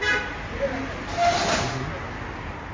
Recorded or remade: recorded